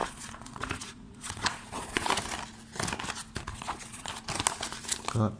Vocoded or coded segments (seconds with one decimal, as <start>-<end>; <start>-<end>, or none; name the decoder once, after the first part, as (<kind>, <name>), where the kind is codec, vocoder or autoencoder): 0.0-2.1 (vocoder, Vocos); 3.5-4.1